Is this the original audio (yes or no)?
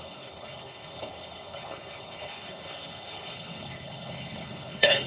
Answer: no